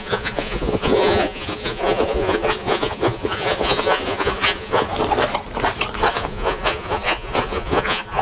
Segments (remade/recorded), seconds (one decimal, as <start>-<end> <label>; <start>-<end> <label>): 0.0-4.9 remade; 4.9-6.1 recorded; 6.1-8.2 remade